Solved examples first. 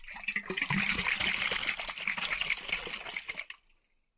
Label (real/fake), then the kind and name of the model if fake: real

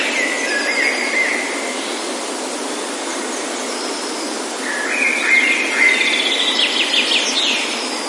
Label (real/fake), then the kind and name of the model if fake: real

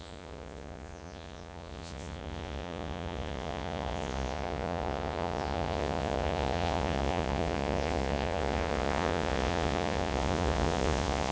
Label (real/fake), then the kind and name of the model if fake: fake, vocoder, Vocos